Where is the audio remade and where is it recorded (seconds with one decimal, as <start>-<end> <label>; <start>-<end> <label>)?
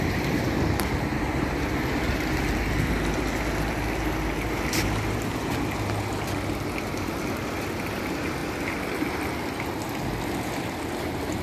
0.0-11.4 recorded